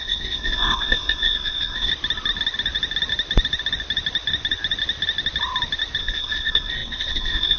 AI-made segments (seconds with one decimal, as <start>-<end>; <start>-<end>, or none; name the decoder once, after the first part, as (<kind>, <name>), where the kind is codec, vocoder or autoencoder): 0.0-1.9 (codec, SNAC); 6.0-7.6